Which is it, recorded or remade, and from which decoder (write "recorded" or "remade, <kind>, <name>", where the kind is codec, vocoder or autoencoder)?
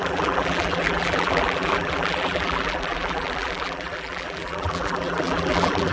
remade, vocoder, BigVGAN v2